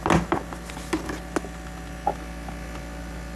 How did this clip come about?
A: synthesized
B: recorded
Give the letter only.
B